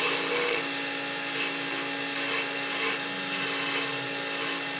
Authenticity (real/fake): real